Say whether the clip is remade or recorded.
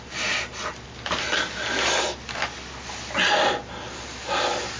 recorded